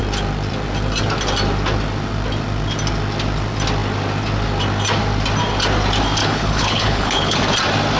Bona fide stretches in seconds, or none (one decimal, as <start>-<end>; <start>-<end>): 0.0-6.2; 7.4-8.0